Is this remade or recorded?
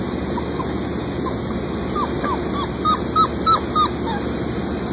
recorded